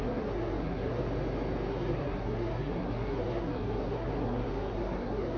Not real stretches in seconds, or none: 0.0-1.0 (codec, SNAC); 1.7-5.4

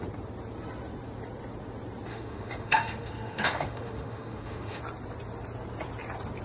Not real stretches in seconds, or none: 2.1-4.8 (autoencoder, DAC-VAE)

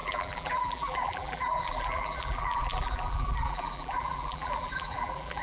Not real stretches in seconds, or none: 0.0-5.4 (vocoder, BigVGAN v2)

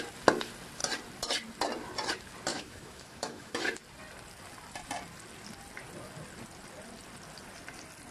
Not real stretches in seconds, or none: 2.5-3.6 (autoencoder, DAC-VAE)

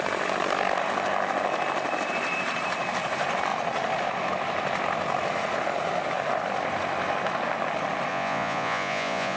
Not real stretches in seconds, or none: 8.1-9.4 (vocoder, Vocos)

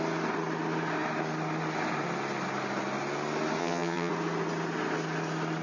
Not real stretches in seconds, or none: 3.6-4.1 (vocoder, HiFi-GAN)

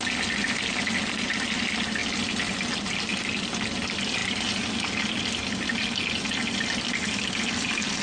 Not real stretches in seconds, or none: none